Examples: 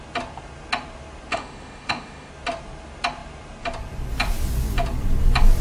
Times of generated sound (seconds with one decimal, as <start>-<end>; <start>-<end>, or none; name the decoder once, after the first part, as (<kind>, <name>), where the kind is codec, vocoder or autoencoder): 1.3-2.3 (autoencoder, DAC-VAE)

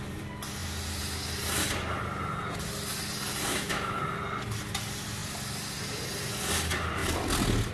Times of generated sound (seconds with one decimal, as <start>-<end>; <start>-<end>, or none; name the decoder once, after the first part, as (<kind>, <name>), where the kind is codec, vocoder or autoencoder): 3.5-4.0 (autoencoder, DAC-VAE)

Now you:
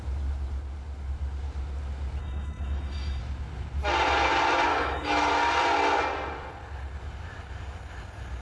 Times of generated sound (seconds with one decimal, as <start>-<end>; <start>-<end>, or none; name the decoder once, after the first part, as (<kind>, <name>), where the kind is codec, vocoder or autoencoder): 2.2-3.2 (autoencoder, DAC-VAE); 4.7-5.3